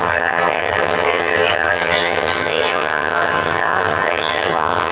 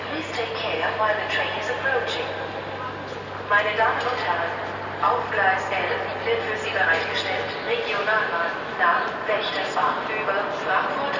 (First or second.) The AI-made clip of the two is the first